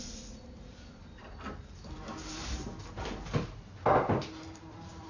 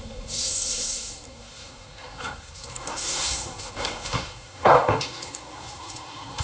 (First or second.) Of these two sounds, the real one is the first